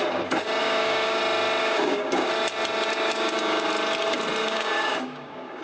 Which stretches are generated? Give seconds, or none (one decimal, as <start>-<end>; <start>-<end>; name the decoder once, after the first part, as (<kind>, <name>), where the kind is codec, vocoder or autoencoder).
0.6-1.2 (codec, DAC); 1.6-2.3; 2.9-3.7; 4.4-5.6